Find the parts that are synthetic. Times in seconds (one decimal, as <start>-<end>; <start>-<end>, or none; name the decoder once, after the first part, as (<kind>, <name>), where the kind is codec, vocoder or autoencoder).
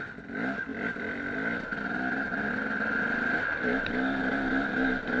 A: 0.7-3.8 (vocoder, BigVGAN v2)